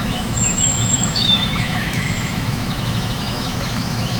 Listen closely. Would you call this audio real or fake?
fake